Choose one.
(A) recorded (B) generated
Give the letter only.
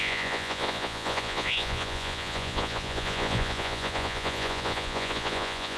B